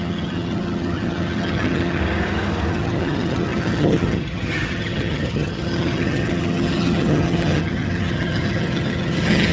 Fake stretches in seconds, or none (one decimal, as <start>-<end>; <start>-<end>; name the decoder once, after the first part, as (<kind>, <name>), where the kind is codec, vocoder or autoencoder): 0.0-2.0 (vocoder, HiFi-GAN); 2.7-9.5